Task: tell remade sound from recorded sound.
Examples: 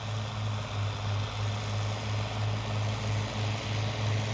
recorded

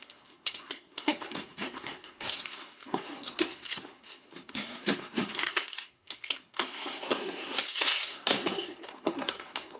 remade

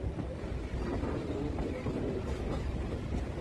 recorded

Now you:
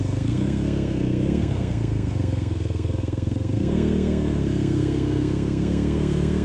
remade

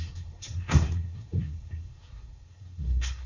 remade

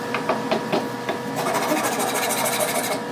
recorded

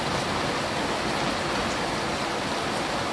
recorded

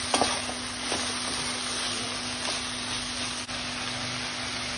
recorded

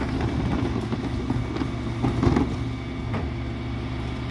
recorded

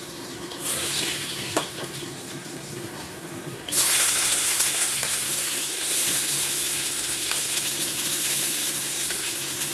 remade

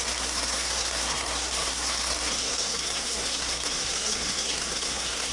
remade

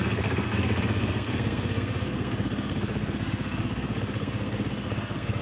remade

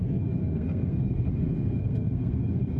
remade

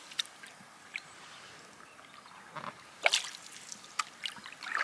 recorded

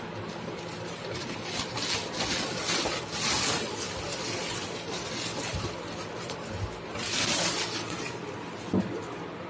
recorded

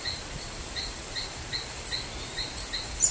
recorded